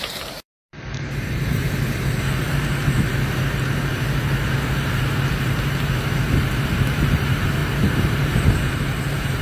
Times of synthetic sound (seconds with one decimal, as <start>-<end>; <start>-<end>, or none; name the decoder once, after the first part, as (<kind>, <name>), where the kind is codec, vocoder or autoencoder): 0.0-9.4 (vocoder, BigVGAN v2)